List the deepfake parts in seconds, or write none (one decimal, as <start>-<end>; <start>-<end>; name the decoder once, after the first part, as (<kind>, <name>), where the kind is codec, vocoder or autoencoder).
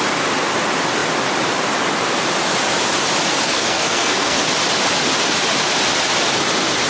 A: 3.3-4.4 (codec, SNAC)